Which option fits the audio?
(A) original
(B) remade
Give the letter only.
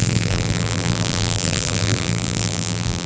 B